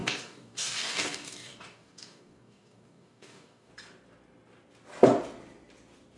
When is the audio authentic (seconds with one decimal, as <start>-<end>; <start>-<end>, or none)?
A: 3.7-6.2